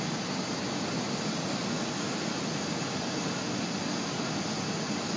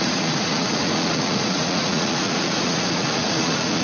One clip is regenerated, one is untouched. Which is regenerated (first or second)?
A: second